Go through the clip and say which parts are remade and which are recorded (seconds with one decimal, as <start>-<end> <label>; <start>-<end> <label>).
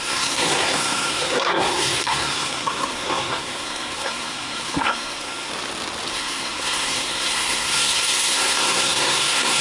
0.0-5.5 remade; 5.5-6.1 recorded; 6.1-9.6 remade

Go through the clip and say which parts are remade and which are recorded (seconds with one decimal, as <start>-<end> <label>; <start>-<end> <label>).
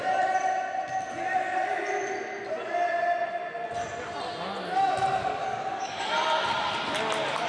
0.0-5.2 recorded; 5.2-6.1 remade; 6.1-7.5 recorded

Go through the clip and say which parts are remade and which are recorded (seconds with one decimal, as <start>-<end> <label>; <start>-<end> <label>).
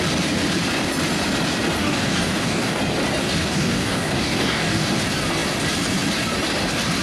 0.0-1.8 recorded; 1.8-2.8 remade; 2.8-3.2 recorded; 3.2-5.0 remade; 5.0-7.0 recorded